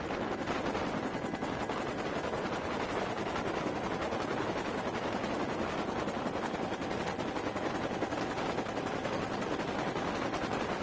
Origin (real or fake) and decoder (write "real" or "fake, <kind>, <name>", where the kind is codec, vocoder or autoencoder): real